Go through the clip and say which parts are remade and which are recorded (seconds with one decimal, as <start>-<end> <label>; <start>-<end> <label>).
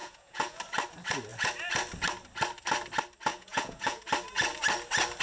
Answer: 0.0-0.6 remade; 0.6-3.3 recorded; 3.3-4.0 remade; 4.0-5.2 recorded